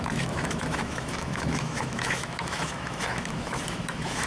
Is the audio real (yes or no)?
no